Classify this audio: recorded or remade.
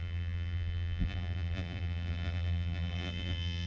remade